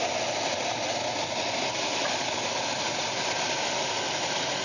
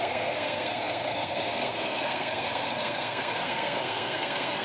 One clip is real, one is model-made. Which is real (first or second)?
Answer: first